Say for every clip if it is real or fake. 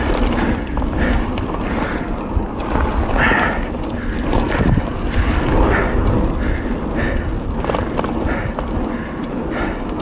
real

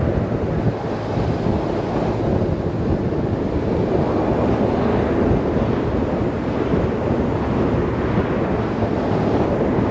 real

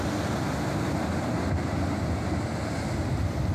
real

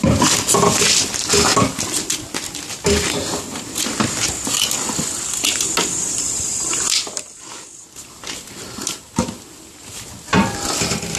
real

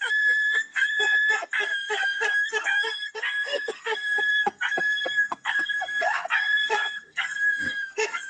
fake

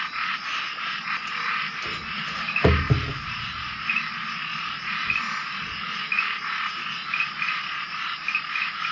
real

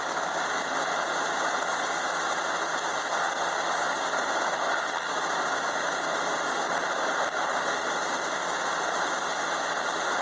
real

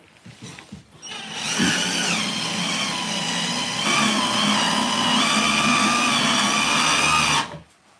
real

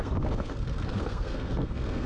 fake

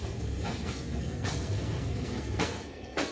fake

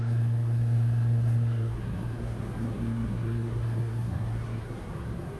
fake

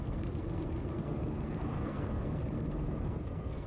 fake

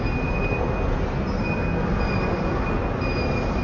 real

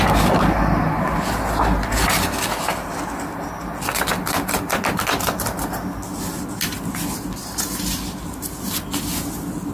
real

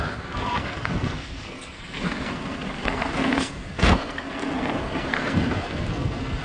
fake